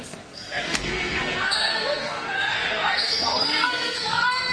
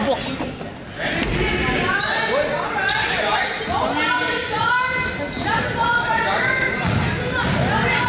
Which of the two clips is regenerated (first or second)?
first